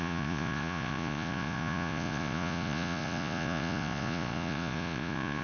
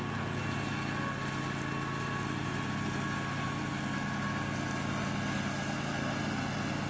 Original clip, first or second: second